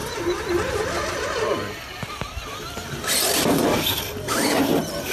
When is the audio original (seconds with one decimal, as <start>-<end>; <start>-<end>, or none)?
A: 0.0-5.1